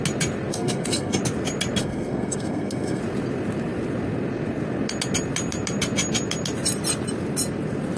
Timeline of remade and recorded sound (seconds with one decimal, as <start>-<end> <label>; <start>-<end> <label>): 0.0-0.5 recorded; 0.5-1.2 remade; 1.2-1.8 recorded; 1.8-3.0 remade; 3.0-8.0 recorded